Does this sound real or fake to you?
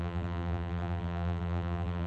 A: fake